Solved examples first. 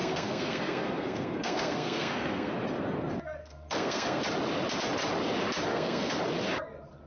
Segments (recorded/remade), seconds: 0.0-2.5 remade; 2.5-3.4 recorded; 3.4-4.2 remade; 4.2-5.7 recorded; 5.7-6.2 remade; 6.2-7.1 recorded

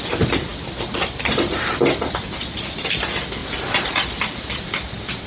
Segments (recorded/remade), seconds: 0.0-5.3 recorded

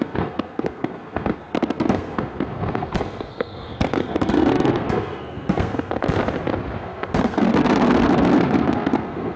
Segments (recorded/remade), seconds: 0.0-6.2 remade; 6.2-6.8 recorded; 6.8-9.4 remade

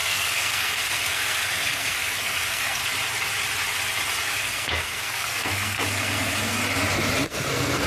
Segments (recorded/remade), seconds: 0.0-2.8 remade; 2.8-4.2 recorded; 4.2-6.6 remade; 6.6-7.2 recorded; 7.2-7.9 remade

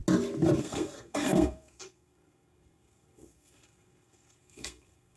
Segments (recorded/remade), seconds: 0.0-0.6 recorded; 0.6-5.2 remade